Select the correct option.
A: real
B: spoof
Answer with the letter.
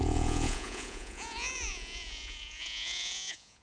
B